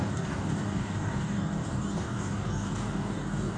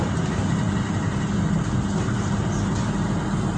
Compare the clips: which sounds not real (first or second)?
first